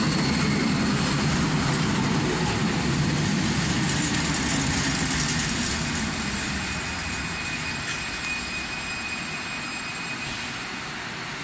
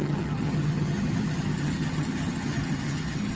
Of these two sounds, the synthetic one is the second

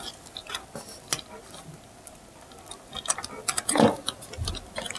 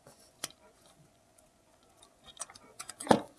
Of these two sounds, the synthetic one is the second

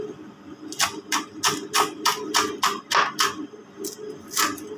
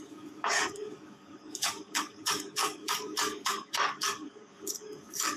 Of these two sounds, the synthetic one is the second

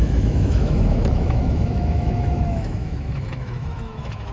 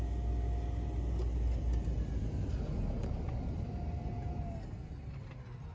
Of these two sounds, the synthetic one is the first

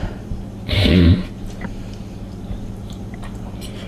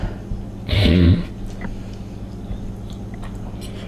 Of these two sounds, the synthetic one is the first